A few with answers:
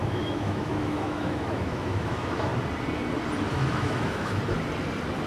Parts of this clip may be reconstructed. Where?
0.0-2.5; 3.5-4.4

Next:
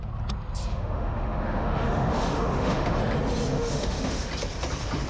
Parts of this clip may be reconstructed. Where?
0.7-3.0; 3.5-4.3

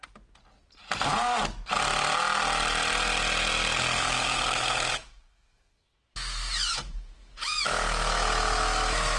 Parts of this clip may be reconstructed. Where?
4.0-9.2

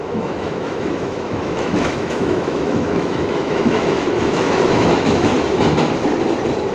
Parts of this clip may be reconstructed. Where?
0.0-5.3

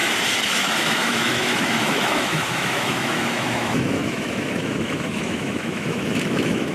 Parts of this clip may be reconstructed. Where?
0.5-6.7

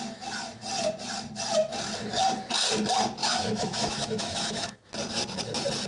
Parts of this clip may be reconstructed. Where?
3.2-4.9

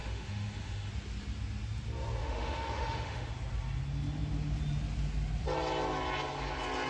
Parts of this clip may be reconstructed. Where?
0.0-0.9; 2.2-3.3